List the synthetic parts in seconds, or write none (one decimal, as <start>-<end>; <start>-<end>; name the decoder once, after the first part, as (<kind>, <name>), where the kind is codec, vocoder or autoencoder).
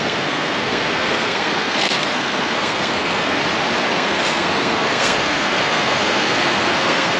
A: 0.0-3.4 (codec, SNAC); 3.9-7.2